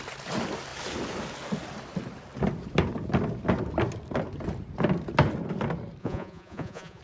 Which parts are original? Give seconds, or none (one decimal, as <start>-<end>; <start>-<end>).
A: 0.0-6.0